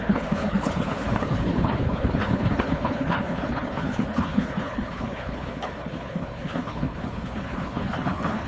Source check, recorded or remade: remade